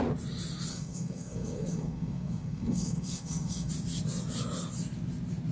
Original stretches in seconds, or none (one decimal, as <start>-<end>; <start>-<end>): 0.0-0.7; 3.7-5.5